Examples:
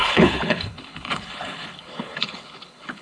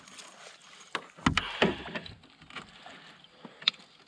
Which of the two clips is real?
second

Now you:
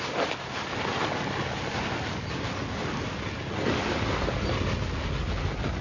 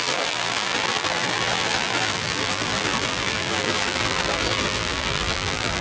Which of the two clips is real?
first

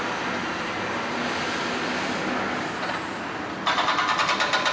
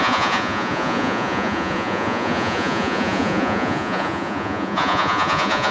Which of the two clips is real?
first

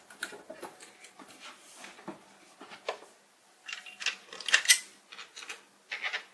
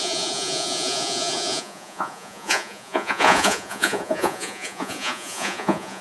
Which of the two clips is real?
first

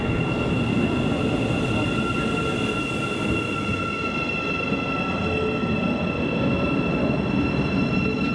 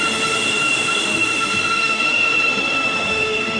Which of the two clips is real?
first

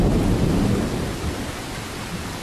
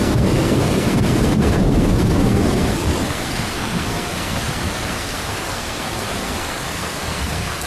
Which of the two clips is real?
first